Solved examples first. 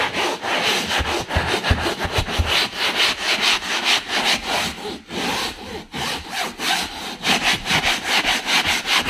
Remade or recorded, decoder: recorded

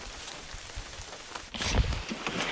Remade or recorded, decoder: recorded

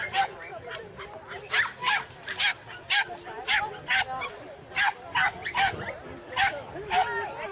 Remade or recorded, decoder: recorded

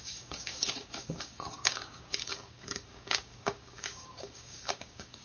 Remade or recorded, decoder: remade, codec, DAC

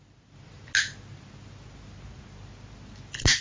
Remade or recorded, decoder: recorded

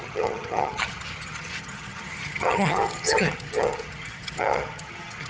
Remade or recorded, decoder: remade, vocoder, HiFi-GAN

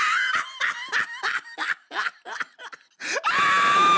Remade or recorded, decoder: recorded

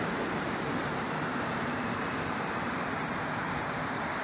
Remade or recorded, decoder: remade, vocoder, BigVGAN v2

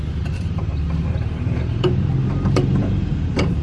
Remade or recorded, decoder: remade, vocoder, BigVGAN v2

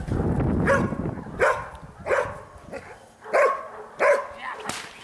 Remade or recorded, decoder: recorded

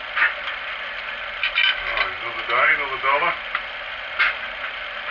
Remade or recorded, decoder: recorded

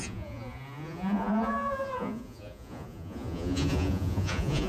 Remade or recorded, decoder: remade, vocoder, Vocos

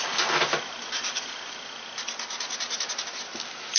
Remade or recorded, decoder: recorded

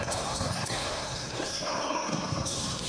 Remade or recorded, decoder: remade, codec, SNAC